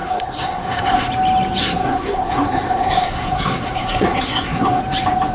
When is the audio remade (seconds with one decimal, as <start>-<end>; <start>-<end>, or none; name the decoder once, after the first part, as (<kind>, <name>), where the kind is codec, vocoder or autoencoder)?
0.0-1.1 (codec, SNAC); 1.6-4.8